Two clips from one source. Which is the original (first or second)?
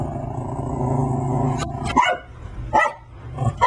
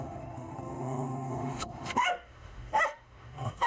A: first